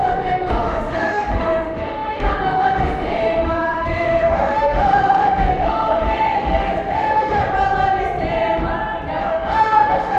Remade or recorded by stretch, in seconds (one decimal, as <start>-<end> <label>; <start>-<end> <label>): 0.0-7.4 remade; 7.4-9.2 recorded; 9.2-10.2 remade